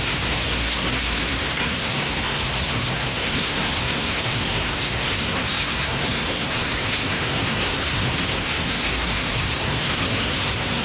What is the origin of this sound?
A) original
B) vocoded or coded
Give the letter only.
B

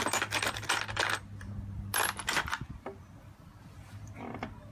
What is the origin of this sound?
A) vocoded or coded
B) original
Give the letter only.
B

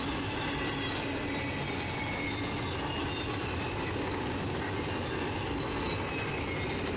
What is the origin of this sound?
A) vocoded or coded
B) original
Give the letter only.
B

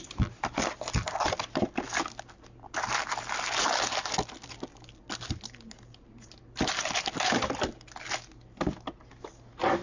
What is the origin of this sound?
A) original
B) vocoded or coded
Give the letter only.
A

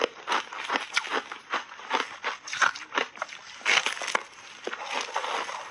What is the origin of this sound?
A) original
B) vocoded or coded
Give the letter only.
A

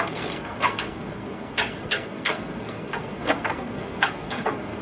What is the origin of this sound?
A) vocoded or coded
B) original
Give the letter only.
A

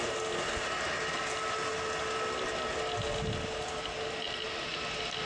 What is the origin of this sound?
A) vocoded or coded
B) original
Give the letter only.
B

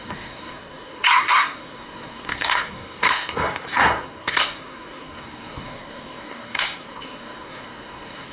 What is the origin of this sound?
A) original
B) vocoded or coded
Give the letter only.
B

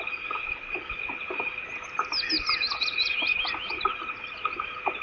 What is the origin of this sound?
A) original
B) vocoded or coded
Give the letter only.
A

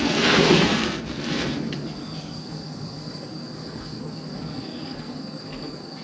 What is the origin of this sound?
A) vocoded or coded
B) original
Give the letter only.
A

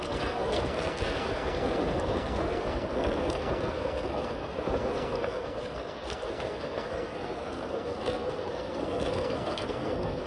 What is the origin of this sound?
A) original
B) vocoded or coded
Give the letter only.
B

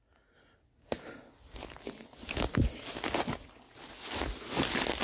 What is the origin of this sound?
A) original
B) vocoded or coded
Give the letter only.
A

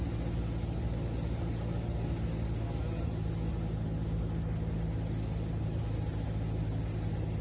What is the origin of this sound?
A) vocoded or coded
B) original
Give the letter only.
B